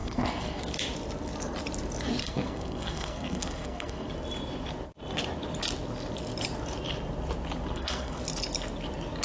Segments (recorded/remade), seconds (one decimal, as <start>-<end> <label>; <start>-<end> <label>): 0.0-0.6 remade; 0.6-2.2 recorded; 2.2-4.1 remade; 4.1-7.7 recorded; 7.7-8.2 remade; 8.2-9.2 recorded